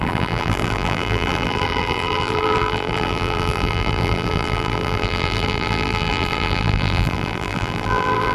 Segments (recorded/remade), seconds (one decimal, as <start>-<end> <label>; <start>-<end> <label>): 0.0-8.3 remade